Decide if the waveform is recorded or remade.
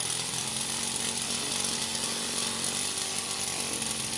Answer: recorded